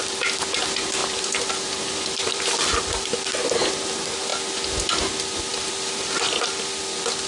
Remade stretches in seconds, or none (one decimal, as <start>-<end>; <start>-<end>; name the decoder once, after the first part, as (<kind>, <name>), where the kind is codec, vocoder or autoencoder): 1.0-3.1 (vocoder, BigVGAN v2); 5.5-6.8